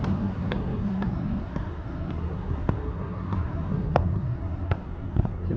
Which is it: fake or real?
fake